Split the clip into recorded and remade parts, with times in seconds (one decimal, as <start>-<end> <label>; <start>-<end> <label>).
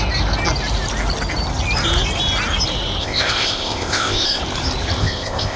0.0-3.0 recorded; 3.0-4.4 remade; 4.4-5.0 recorded; 5.0-5.6 remade